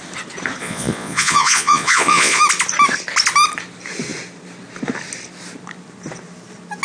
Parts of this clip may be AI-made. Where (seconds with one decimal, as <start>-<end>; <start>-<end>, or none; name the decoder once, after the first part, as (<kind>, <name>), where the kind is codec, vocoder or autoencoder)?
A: 0.6-2.4 (vocoder, Vocos)